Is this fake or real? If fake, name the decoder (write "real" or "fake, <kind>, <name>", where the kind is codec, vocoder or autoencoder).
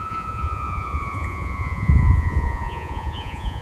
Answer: fake, vocoder, Vocos